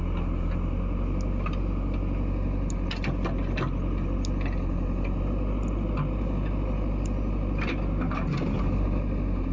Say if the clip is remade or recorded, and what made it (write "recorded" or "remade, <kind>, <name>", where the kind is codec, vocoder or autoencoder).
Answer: recorded